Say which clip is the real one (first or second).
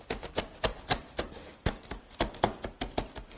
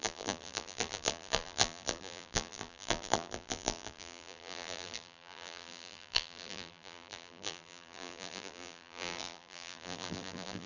first